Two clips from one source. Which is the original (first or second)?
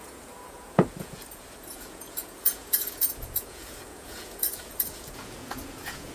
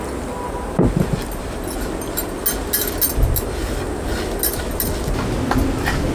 second